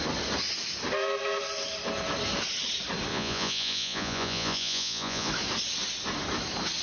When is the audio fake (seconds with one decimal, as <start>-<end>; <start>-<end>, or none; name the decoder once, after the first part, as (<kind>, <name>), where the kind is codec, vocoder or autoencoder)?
3.1-5.3 (vocoder, Vocos)